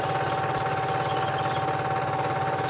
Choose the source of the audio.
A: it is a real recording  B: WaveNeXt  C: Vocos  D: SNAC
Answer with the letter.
A